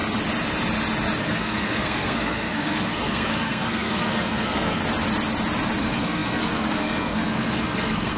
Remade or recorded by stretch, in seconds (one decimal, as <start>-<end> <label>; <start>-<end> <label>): 0.0-1.2 recorded; 1.2-4.8 remade; 4.8-5.8 recorded; 5.8-8.2 remade